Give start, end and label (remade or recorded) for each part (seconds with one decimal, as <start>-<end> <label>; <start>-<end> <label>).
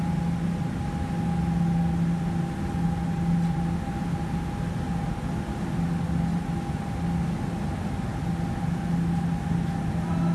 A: 0.0-10.3 recorded